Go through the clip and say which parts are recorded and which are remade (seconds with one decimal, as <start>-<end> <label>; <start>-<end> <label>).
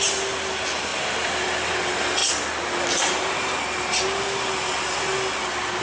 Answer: 0.0-5.8 recorded